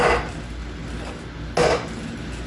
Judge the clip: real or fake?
real